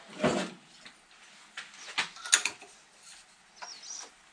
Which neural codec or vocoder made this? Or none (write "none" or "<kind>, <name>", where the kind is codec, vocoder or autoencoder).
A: none